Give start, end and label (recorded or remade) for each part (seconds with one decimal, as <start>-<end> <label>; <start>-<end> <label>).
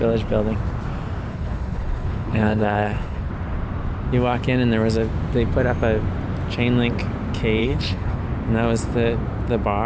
0.0-1.3 recorded; 1.3-3.3 remade; 3.3-7.6 recorded; 7.6-8.2 remade; 8.2-9.9 recorded